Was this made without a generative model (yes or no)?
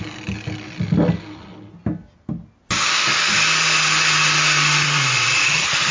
yes